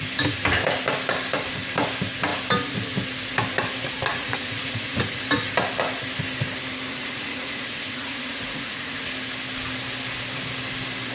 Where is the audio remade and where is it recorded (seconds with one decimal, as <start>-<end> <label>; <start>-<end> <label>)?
0.0-4.1 recorded; 4.1-5.2 remade; 5.2-6.9 recorded; 6.9-9.0 remade; 9.0-11.1 recorded